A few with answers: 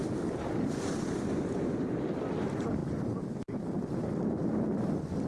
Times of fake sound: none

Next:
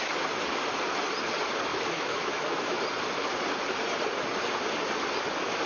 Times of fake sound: 1.7-2.8 (autoencoder, DAC-VAE)

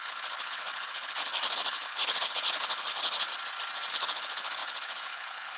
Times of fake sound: 0.0-3.3 (codec, HILCodec); 3.9-5.6

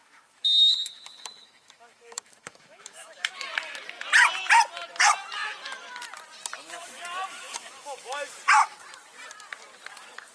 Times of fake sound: 0.0-3.3 (autoencoder, DAC-VAE); 7.3-8.3